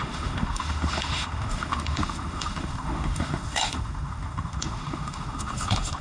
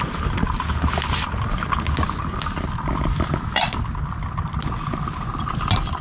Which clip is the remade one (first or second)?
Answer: first